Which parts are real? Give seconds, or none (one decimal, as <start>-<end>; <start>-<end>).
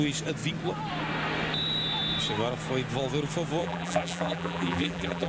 0.0-3.6